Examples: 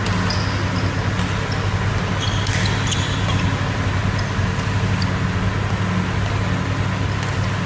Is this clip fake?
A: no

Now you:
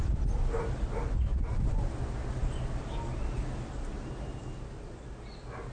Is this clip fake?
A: no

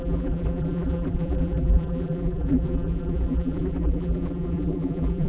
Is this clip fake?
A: yes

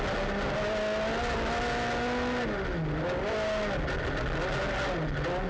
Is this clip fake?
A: no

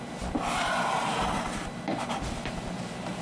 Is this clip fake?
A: no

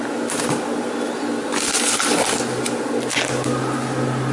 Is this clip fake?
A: no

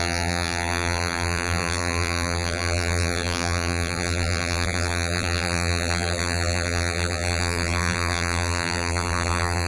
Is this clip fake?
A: yes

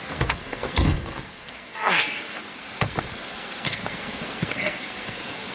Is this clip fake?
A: yes